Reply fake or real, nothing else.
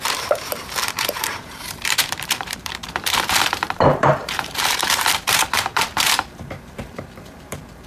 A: fake